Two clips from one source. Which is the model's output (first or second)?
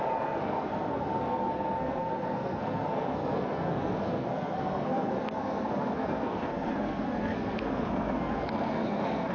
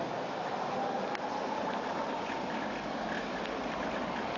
first